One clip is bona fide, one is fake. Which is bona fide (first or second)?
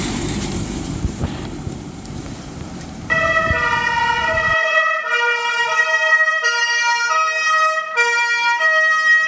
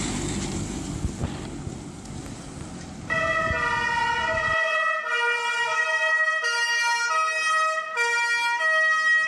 second